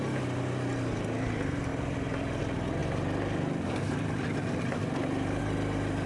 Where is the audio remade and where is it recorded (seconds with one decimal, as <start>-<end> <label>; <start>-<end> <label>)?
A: 0.0-6.1 recorded